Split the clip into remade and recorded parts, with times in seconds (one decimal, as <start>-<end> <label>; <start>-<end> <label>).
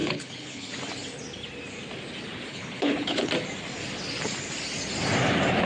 0.0-0.7 remade; 0.7-2.5 recorded; 2.5-3.3 remade; 3.3-5.7 recorded